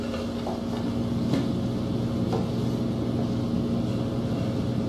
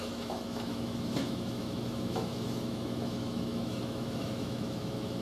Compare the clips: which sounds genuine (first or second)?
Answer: first